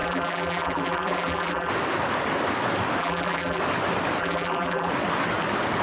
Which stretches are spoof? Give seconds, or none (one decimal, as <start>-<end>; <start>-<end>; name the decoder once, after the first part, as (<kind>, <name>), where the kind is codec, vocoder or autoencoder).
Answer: 0.0-1.7 (vocoder, BigVGAN v2); 3.0-3.6; 4.2-4.9